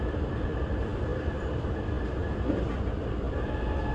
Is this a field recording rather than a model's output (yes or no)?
yes